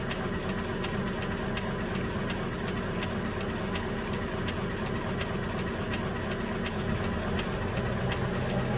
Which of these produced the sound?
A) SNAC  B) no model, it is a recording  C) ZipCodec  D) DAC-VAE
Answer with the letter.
B